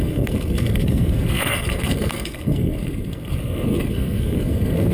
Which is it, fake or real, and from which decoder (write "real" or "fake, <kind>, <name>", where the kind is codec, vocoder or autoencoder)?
fake, codec, SNAC